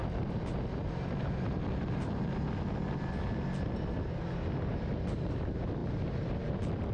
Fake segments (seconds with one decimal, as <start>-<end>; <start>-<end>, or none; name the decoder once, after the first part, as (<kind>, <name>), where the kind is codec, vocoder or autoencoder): 0.0-2.2 (vocoder, BigVGAN v2)